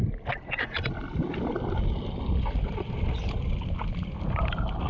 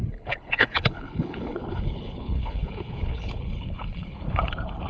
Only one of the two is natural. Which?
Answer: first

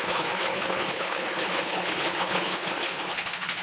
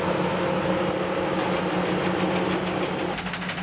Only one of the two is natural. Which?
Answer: second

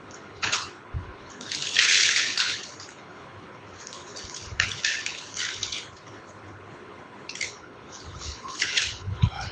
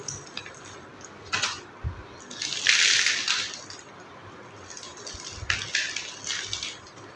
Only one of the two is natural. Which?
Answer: second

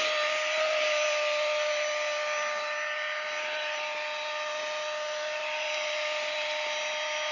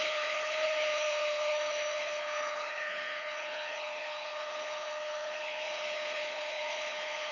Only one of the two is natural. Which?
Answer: first